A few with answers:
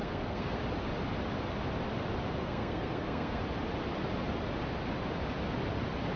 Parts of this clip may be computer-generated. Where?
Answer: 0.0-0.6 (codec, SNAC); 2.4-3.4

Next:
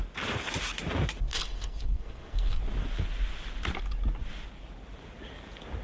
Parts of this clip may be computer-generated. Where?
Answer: 1.3-2.6 (codec, SNAC)

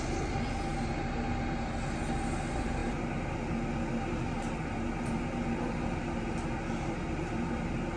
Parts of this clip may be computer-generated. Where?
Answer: none

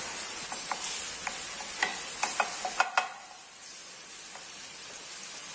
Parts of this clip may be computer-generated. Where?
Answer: none

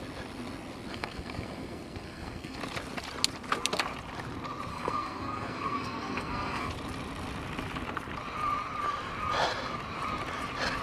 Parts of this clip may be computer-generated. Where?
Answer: 0.9-2.6 (codec, SNAC); 4.7-6.7

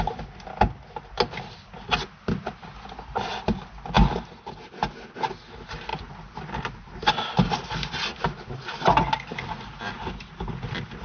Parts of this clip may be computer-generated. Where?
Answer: none

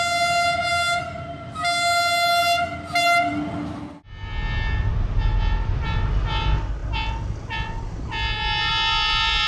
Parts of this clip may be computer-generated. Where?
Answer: none